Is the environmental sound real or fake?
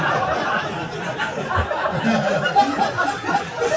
real